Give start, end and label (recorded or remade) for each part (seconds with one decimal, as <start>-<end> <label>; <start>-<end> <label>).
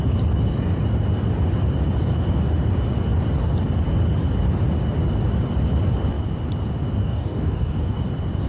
0.0-7.0 recorded; 7.0-8.0 remade; 8.0-8.5 recorded